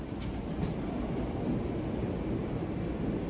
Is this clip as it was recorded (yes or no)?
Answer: yes